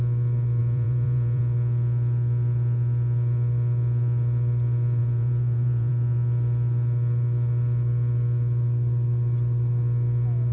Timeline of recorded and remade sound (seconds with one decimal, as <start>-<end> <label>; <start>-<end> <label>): 0.0-0.6 recorded; 0.6-1.4 remade; 1.4-5.0 recorded; 5.0-5.9 remade; 5.9-10.5 recorded